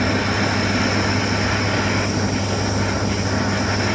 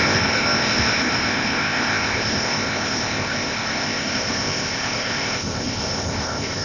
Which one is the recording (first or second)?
first